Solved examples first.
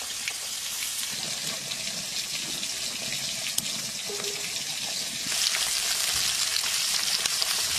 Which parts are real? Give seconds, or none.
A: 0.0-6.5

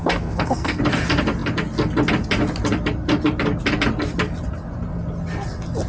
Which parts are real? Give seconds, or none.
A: 0.8-5.9

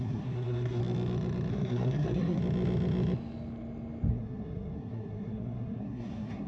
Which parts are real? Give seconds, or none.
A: 0.8-1.5; 2.4-4.1

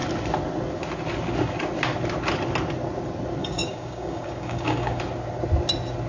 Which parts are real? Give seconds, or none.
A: 0.0-3.4; 5.0-6.1

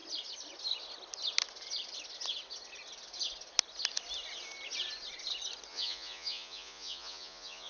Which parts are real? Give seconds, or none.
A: 0.0-5.7